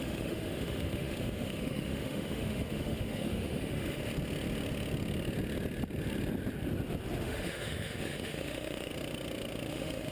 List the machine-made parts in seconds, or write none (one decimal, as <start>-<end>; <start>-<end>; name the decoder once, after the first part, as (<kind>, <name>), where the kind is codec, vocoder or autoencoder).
0.0-4.0 (autoencoder, DAC-VAE); 7.2-8.9; 9.7-10.1